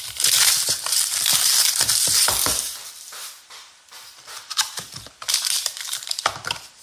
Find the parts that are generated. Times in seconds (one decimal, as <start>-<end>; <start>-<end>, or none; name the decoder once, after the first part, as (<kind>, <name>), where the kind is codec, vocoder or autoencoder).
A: 0.0-6.8 (vocoder, BigVGAN v2)